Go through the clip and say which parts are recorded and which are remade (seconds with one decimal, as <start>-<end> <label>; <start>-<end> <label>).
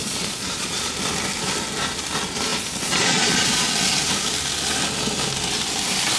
0.0-0.9 remade; 0.9-2.5 recorded; 2.5-3.7 remade; 3.7-6.2 recorded